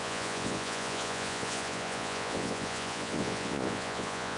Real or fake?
fake